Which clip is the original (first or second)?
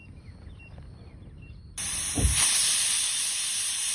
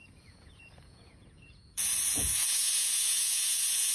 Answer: first